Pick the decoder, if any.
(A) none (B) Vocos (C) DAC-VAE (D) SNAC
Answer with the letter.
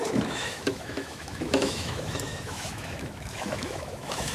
C